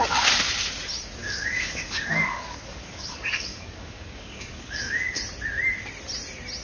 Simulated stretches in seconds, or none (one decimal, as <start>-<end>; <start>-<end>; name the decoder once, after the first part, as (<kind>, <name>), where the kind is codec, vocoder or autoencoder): 1.2-5.2 (codec, DAC)